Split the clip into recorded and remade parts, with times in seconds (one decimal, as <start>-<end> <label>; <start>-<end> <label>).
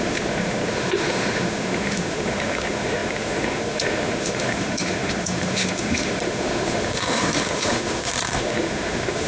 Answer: 0.0-9.3 remade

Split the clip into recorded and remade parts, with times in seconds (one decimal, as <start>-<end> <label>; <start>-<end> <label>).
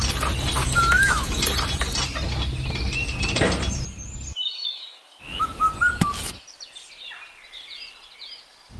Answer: 0.0-0.6 recorded; 0.6-1.4 remade; 1.4-4.3 recorded; 4.3-5.7 remade; 5.7-8.8 recorded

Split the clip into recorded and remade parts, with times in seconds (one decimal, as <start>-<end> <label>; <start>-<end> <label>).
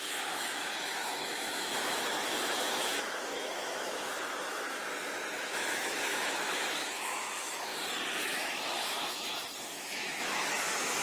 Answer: 0.0-4.8 remade; 4.8-5.3 recorded; 5.3-7.7 remade; 7.7-8.2 recorded; 8.2-9.3 remade; 9.3-9.9 recorded; 9.9-11.0 remade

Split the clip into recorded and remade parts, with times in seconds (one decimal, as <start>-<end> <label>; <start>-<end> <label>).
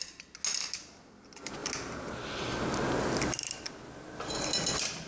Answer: 0.0-5.1 recorded